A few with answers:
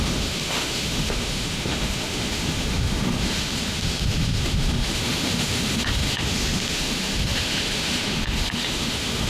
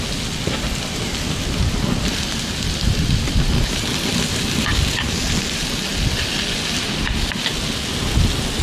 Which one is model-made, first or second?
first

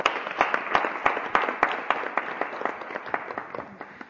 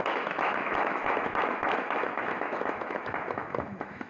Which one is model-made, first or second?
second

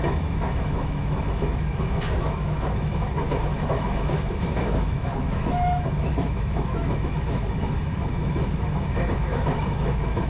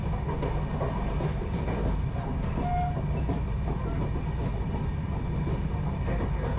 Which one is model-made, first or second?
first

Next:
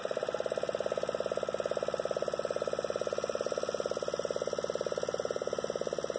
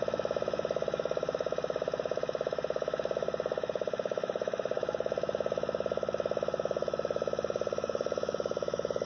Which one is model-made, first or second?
second